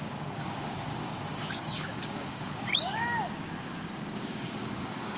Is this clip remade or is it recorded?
remade